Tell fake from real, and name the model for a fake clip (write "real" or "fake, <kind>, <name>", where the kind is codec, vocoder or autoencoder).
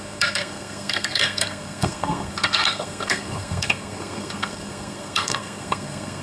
fake, codec, SNAC